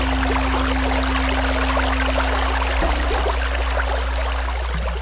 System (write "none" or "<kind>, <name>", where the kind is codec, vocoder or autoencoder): none